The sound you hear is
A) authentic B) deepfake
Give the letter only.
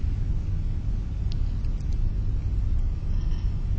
A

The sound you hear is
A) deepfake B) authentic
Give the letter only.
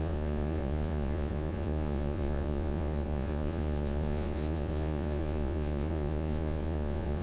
A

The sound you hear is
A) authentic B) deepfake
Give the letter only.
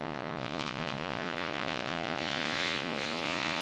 B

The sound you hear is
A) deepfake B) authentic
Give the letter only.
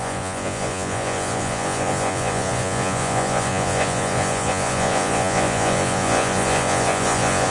A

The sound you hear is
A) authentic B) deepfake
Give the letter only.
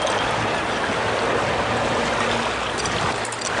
A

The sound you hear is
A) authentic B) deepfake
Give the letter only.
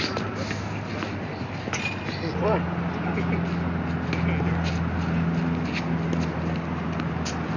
A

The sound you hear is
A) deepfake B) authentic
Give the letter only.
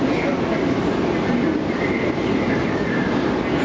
B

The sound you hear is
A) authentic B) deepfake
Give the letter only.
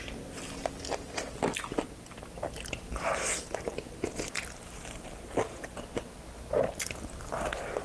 A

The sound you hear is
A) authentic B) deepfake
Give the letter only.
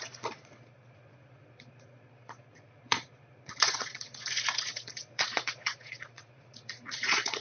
B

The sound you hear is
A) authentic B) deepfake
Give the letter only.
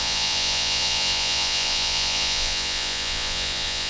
B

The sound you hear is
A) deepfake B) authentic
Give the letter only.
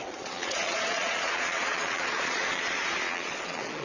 A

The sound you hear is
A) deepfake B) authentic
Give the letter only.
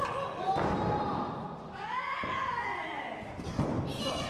B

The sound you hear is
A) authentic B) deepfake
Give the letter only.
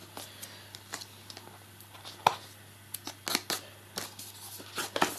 A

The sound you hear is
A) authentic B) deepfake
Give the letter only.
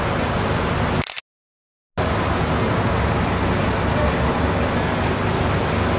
A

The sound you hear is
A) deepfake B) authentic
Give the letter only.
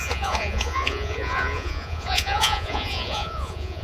A